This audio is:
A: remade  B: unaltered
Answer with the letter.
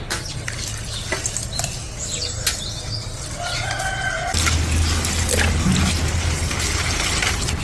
B